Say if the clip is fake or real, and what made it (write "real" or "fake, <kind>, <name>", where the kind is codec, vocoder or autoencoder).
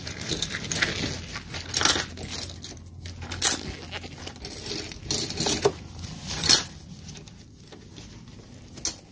real